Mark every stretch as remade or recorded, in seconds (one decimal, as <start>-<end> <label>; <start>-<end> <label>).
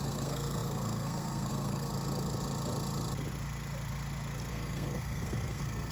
0.0-1.9 remade; 1.9-4.5 recorded; 4.5-5.9 remade